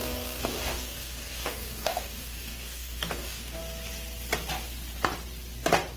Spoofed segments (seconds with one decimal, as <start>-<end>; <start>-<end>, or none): 0.0-3.6